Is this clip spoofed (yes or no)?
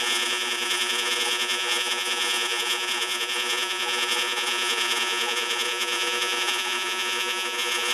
yes